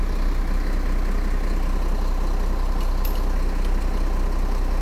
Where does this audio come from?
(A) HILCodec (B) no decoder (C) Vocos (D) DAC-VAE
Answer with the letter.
B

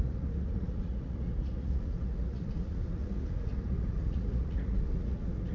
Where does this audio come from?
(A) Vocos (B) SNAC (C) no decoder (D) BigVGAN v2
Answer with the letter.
A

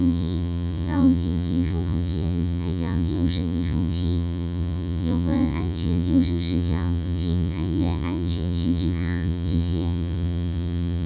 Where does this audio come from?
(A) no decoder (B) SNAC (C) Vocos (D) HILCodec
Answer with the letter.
C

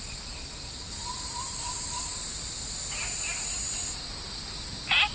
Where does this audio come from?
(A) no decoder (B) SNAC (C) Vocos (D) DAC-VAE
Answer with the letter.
A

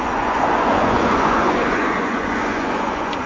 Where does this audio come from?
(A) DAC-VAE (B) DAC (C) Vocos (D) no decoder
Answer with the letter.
C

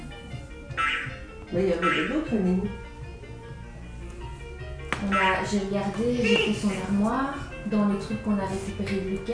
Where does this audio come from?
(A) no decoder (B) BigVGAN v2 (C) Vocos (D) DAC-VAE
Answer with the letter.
A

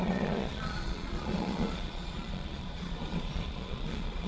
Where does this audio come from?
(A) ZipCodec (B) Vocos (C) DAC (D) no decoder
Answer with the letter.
B